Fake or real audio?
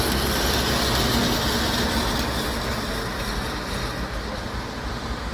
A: real